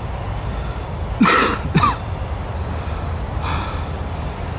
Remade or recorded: recorded